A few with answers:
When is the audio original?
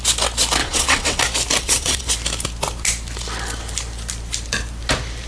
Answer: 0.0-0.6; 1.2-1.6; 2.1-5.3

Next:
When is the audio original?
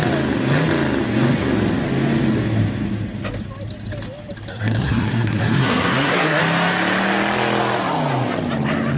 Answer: 0.0-4.5; 6.4-9.0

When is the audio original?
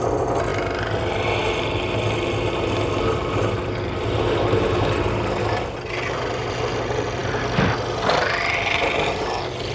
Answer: 0.0-9.7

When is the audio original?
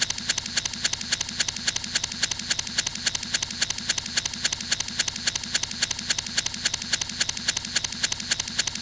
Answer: 0.0-8.8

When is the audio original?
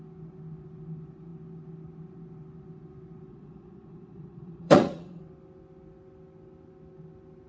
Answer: 0.0-3.3; 5.2-7.5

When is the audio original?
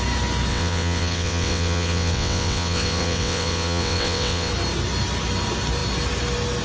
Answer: 0.0-0.5; 4.5-6.6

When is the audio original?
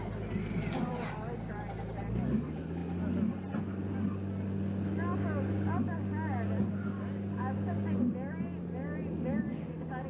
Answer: 0.0-10.1